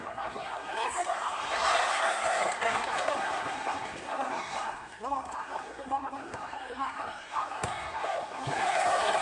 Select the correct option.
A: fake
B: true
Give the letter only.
A